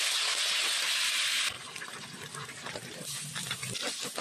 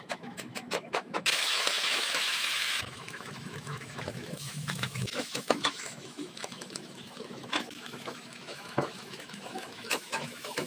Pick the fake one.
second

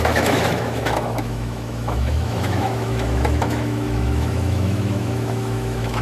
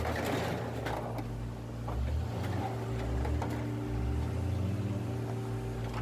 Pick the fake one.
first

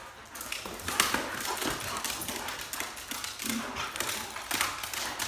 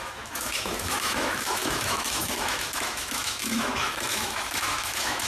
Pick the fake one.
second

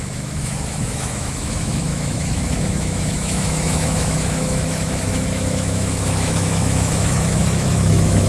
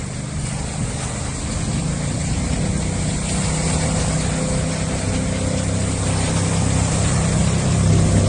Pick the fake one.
first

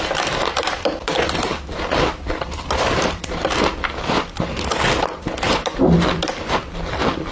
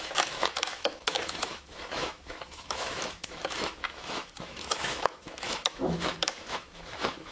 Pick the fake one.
second